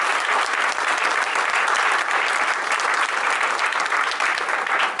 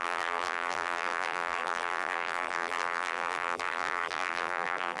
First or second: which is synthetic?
second